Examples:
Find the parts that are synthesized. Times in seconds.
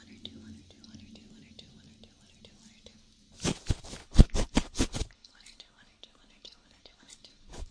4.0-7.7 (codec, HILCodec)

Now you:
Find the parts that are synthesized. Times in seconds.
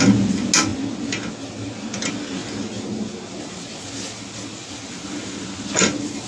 none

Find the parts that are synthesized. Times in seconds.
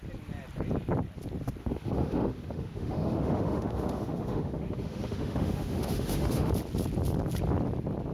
1.6-6.5 (autoencoder, DAC-VAE)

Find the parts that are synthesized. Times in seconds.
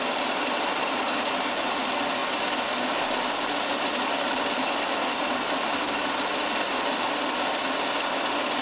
none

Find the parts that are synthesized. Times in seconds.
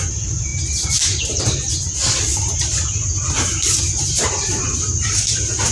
0.5-1.4 (vocoder, BigVGAN v2); 2.3-5.7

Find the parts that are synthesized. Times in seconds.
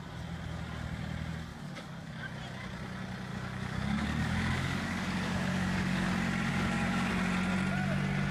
1.5-2.3 (codec, DAC); 3.3-6.1; 6.5-7.1